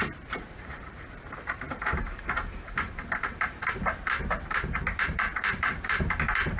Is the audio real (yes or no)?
no